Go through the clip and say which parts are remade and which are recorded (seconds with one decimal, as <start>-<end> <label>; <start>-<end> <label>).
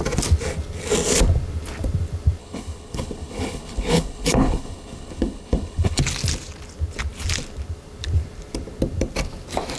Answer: 0.0-2.4 recorded; 2.4-6.0 remade; 6.0-9.8 recorded